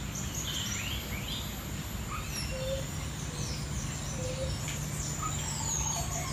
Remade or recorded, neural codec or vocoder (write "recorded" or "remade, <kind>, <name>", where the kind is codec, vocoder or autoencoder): recorded